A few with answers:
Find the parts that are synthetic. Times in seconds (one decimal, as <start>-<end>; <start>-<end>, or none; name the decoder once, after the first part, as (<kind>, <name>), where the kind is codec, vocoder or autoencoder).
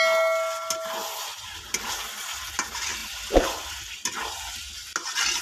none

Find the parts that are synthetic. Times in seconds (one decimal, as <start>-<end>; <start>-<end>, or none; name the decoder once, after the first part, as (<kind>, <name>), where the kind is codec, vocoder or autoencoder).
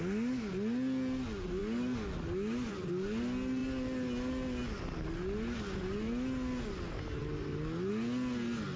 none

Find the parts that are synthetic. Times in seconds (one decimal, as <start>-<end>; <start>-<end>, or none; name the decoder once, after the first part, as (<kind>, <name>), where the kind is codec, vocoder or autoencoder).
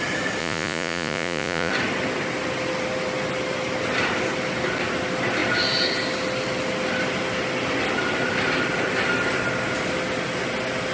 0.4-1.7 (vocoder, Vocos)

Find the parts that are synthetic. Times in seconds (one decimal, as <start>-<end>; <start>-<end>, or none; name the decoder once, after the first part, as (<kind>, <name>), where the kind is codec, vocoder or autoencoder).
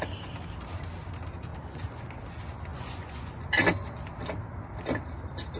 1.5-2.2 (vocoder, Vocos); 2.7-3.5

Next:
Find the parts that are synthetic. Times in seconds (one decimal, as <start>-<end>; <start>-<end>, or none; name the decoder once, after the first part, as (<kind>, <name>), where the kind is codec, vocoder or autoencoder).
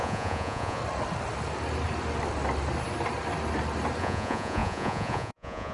0.0-0.8 (vocoder, Vocos); 4.0-5.7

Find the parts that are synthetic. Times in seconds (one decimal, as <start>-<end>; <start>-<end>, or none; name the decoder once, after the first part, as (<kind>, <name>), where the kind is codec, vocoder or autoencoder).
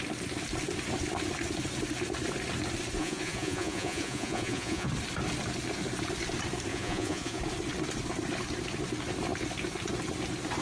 3.0-4.9 (vocoder, Vocos); 6.7-7.4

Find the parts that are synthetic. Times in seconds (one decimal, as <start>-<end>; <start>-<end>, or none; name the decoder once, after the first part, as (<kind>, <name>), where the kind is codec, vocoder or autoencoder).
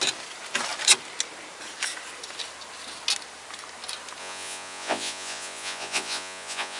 4.2-6.8 (vocoder, Vocos)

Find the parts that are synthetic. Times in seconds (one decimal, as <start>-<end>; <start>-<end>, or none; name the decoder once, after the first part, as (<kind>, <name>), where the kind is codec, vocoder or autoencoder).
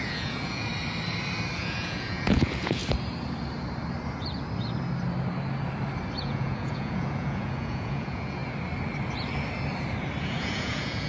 0.0-0.7 (vocoder, Vocos); 1.6-2.8; 6.2-8.4; 10.2-11.1